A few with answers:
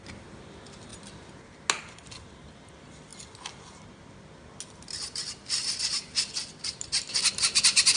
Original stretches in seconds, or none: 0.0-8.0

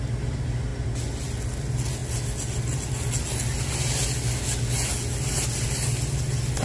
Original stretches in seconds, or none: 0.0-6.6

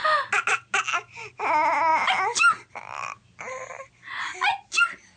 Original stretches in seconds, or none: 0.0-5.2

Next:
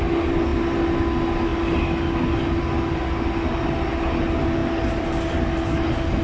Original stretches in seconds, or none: 0.0-6.2

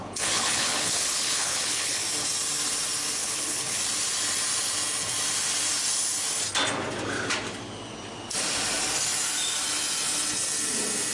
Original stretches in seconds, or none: 2.0-3.2; 3.8-11.1

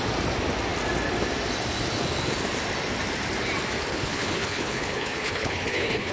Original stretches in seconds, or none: 0.0-3.9

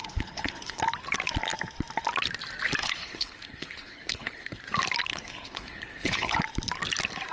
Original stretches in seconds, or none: 0.8-2.8; 4.6-5.1; 6.4-7.3